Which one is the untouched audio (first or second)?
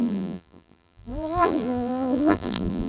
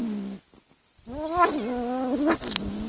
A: second